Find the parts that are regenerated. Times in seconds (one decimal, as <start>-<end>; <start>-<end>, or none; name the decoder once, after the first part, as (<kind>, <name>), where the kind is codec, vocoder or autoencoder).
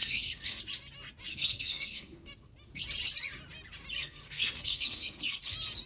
0.0-0.6 (codec, SNAC); 1.3-2.3; 4.0-5.4